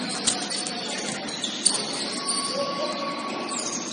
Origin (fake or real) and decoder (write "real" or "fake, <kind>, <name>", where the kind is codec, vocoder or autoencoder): real